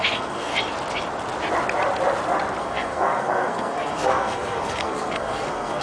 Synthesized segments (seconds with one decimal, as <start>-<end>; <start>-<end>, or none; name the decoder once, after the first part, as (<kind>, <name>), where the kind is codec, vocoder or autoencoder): 0.0-0.5 (codec, SNAC); 2.6-5.8